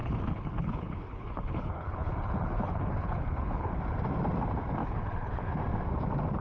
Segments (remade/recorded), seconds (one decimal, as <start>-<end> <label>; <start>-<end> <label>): 0.0-3.8 remade; 3.8-4.8 recorded; 4.8-5.5 remade; 5.5-6.4 recorded